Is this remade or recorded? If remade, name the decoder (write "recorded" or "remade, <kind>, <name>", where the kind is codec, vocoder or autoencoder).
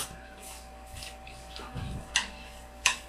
remade, codec, DAC